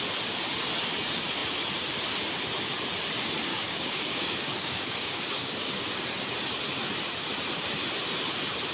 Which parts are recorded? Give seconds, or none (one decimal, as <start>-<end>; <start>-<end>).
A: 0.0-3.5; 6.0-8.7